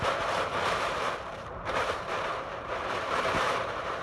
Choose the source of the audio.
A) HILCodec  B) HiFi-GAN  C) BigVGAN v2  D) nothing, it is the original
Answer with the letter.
C